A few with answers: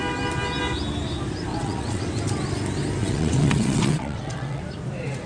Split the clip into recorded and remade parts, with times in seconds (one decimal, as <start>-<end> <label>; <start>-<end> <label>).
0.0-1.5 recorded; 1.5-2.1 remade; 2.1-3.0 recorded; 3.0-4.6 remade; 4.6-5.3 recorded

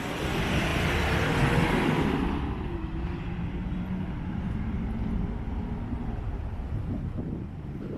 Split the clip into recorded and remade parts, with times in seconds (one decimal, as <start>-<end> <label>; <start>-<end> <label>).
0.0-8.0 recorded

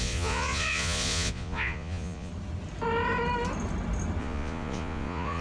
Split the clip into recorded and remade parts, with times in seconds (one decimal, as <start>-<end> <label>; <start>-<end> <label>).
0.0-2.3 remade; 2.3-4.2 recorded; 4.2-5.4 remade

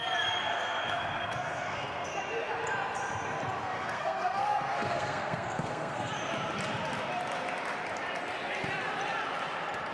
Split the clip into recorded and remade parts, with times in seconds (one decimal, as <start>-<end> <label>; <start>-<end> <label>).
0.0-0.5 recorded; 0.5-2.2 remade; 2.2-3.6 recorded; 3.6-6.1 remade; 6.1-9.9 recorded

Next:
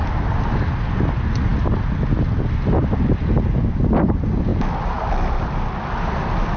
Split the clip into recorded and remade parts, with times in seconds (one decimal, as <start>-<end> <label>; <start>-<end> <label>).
0.0-6.6 recorded